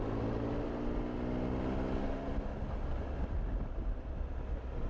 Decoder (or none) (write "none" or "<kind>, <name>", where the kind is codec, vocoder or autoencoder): none